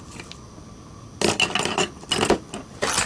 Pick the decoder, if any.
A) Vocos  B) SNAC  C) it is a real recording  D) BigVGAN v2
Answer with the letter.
C